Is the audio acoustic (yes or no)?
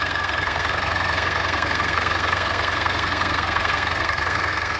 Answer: no